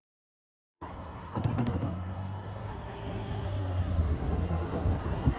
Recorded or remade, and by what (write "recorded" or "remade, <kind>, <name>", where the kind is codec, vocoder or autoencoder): remade, codec, SNAC